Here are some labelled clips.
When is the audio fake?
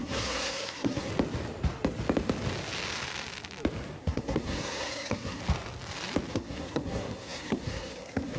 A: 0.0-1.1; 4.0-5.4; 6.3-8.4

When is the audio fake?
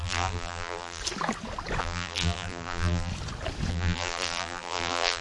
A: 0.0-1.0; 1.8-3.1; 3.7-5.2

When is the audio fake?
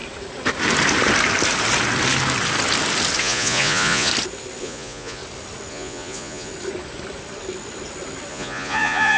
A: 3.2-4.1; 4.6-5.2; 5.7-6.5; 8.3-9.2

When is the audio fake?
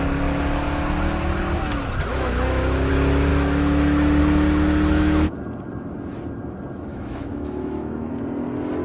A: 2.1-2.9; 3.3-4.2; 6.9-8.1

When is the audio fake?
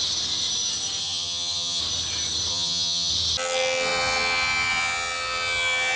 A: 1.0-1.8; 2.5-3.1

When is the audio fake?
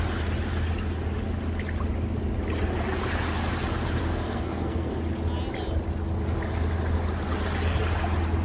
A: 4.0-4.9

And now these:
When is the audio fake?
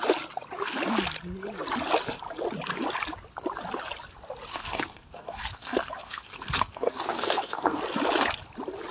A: 4.5-7.8